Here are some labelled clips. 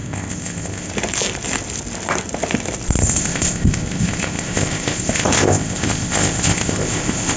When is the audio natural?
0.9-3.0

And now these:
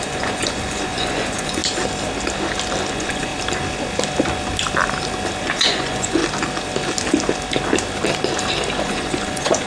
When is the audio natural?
1.6-2.9; 3.3-5.4; 6.2-8.8

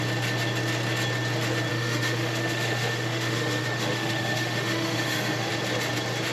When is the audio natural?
0.0-1.7; 5.5-6.3

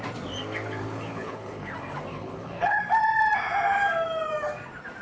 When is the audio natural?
0.0-0.8; 1.7-2.1; 2.8-5.0

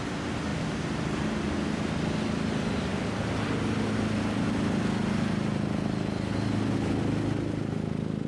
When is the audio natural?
0.0-8.3

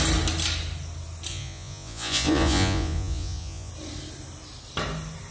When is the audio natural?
0.0-1.3; 3.7-5.3